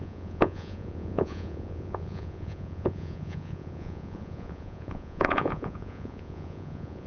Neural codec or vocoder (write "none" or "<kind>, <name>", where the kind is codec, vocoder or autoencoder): vocoder, Vocos